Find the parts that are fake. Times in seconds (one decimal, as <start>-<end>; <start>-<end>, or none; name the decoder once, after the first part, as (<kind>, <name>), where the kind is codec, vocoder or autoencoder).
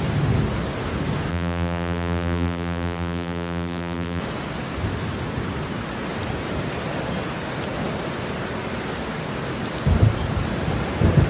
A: 1.3-4.2 (vocoder, BigVGAN v2)